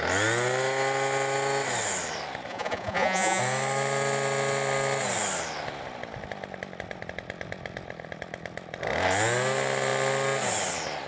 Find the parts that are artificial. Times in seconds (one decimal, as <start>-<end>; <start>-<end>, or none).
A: 2.5-3.4